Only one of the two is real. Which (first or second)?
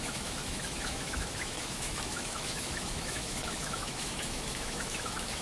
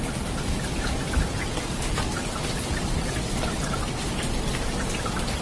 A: second